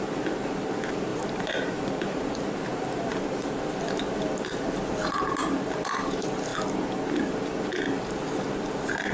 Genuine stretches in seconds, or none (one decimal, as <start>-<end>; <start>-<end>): 0.0-1.1; 5.2-9.1